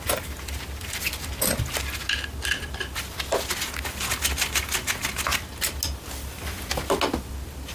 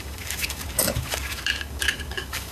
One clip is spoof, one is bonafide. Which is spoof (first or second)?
second